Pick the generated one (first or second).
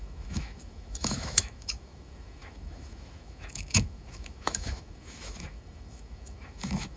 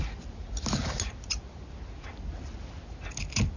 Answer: first